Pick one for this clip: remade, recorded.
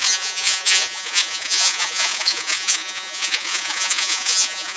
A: remade